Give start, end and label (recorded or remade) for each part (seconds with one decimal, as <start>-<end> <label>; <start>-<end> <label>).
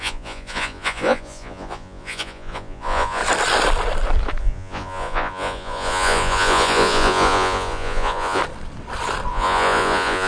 0.0-3.2 remade; 3.2-4.4 recorded; 4.4-8.4 remade; 8.4-9.3 recorded; 9.3-10.3 remade